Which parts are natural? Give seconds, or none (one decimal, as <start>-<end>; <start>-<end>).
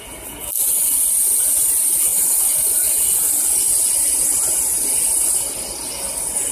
0.0-6.5